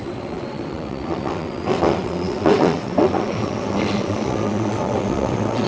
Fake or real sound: fake